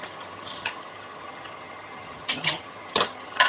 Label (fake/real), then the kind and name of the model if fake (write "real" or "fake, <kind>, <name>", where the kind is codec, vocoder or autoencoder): fake, vocoder, HiFi-GAN